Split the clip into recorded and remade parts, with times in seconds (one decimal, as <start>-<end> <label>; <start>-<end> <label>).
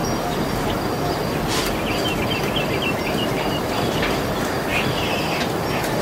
0.0-6.0 recorded